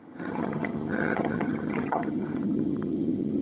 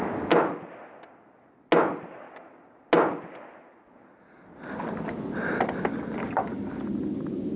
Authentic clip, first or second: second